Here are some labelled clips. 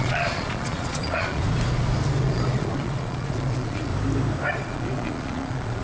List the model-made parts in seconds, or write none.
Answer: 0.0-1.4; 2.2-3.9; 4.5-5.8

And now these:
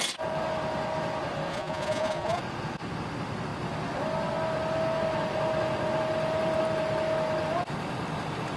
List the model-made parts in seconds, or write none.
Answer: 1.5-2.4

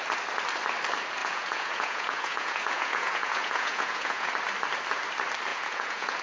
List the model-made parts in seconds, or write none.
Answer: 1.2-4.3; 5.5-6.2

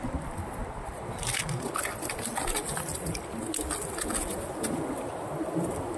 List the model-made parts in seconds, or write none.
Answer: none